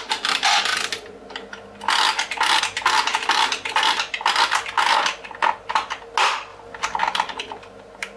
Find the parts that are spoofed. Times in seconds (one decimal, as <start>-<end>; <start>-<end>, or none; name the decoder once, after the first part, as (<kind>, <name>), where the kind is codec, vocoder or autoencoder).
none